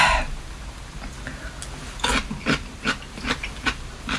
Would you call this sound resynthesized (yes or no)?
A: no